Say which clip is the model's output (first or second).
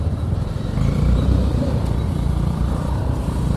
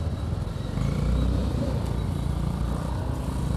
first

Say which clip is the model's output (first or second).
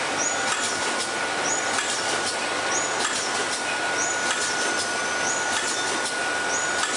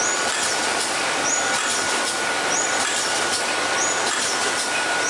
second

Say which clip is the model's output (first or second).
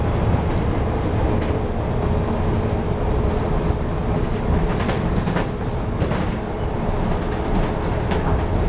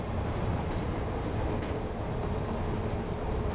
second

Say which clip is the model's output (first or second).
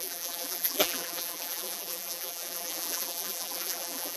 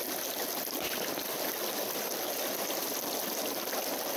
first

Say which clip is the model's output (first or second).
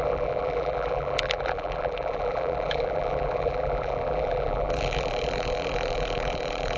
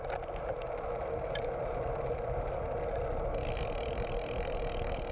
first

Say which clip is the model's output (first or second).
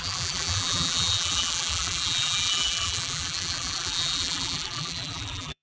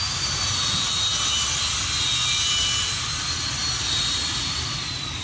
first